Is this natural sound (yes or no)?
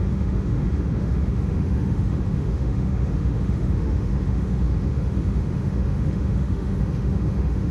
no